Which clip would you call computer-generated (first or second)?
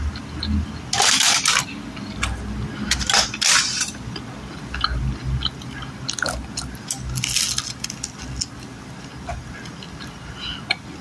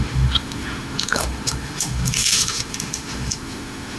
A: second